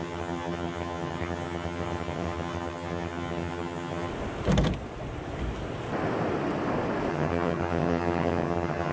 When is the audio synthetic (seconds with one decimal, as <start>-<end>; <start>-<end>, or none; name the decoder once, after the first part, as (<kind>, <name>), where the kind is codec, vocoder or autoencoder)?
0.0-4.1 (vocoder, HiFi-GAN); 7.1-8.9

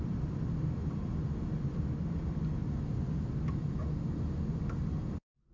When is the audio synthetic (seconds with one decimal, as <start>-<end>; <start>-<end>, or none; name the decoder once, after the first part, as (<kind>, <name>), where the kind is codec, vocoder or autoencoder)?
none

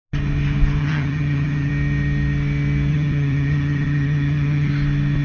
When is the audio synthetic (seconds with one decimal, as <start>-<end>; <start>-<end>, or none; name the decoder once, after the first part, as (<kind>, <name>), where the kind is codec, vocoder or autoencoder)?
0.8-1.7 (vocoder, HiFi-GAN); 2.9-4.7

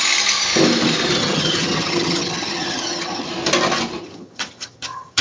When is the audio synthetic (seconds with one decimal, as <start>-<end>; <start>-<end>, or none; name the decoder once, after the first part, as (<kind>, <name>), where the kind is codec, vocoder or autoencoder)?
1.2-3.3 (vocoder, HiFi-GAN); 4.0-5.2

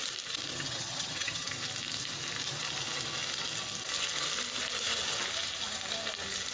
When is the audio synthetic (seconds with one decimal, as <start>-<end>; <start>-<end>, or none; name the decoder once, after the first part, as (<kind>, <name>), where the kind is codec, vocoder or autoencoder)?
0.5-1.5 (vocoder, HiFi-GAN)

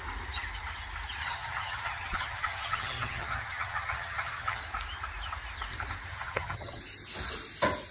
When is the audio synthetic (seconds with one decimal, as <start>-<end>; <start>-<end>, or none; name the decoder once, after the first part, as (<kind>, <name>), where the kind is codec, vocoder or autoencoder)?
1.2-4.6 (vocoder, HiFi-GAN); 6.1-6.8